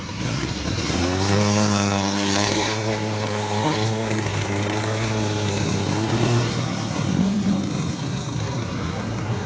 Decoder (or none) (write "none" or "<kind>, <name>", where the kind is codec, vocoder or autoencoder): codec, SNAC